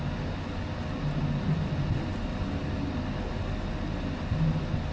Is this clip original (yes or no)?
yes